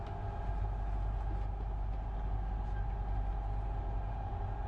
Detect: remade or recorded recorded